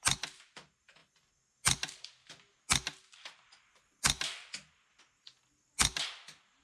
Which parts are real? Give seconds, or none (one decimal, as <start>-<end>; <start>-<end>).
0.0-6.6